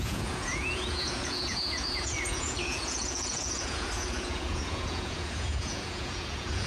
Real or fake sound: fake